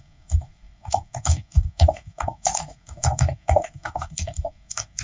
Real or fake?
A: fake